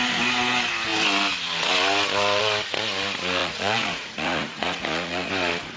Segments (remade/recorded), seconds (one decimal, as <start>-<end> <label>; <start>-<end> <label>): 0.0-3.4 recorded; 3.4-5.3 remade; 5.3-5.8 recorded